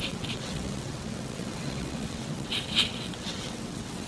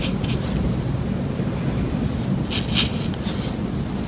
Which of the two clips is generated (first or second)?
first